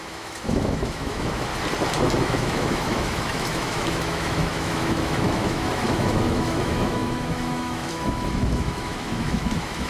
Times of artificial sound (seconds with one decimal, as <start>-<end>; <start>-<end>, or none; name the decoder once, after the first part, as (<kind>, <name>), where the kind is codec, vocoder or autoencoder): 0.0-1.5 (autoencoder, DAC-VAE); 2.2-9.9